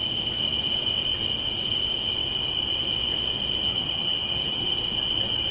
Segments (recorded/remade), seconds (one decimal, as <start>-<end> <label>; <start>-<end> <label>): 0.0-3.7 recorded; 3.7-4.7 remade; 4.7-5.5 recorded